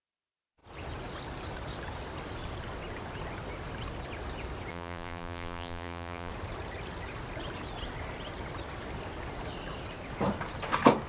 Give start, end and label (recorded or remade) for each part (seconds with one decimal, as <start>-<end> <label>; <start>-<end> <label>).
0.0-4.7 recorded; 4.7-6.3 remade; 6.3-11.1 recorded